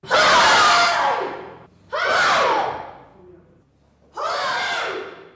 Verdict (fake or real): real